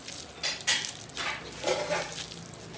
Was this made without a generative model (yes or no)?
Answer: yes